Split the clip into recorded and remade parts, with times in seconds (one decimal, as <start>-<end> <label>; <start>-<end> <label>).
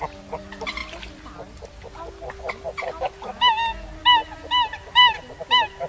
0.0-5.9 recorded